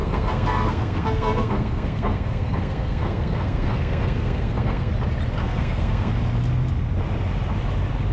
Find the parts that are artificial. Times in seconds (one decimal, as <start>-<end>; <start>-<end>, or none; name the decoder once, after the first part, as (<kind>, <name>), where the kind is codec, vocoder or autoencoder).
0.0-4.9 (codec, SNAC); 5.4-6.1